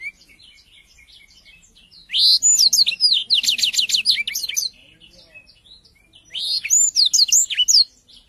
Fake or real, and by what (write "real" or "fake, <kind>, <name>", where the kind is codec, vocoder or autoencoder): real